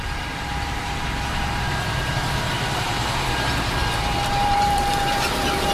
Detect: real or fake fake